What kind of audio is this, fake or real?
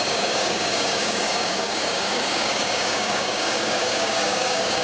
fake